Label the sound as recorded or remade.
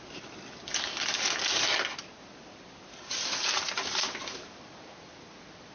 recorded